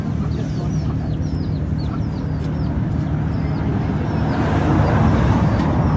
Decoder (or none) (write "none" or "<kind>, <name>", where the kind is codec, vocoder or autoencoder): none